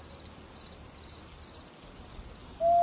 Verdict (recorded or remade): recorded